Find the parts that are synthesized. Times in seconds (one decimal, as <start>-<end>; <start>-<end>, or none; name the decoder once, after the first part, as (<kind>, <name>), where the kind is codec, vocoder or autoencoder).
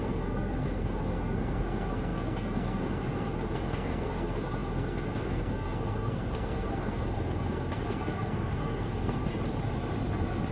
0.0-9.3 (codec, SNAC)